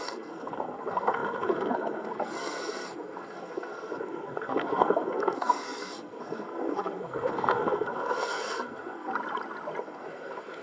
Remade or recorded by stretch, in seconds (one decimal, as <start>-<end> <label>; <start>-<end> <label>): 0.0-9.1 remade; 9.1-9.8 recorded; 9.8-10.6 remade

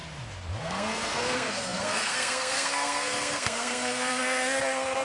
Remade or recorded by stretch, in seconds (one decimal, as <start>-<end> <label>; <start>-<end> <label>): 0.0-0.6 recorded; 0.6-5.0 remade